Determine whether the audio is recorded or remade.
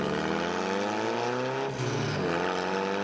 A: recorded